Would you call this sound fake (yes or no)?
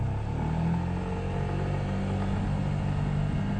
no